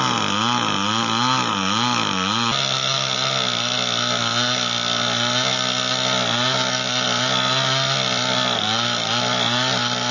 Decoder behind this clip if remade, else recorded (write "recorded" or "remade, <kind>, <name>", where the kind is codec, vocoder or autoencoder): recorded